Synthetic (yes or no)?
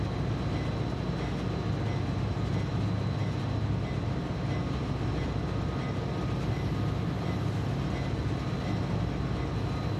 no